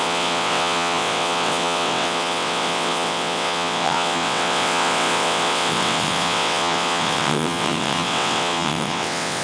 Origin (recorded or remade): remade